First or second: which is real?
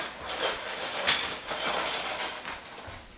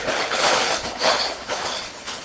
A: first